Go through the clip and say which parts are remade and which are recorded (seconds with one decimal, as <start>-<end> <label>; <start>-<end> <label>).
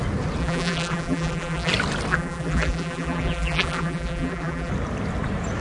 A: 0.0-0.4 recorded; 0.4-1.7 remade; 1.7-2.1 recorded; 2.1-4.7 remade; 4.7-5.6 recorded